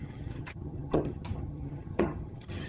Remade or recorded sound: remade